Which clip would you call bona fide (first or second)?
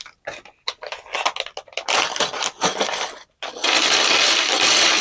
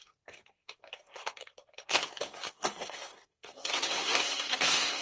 first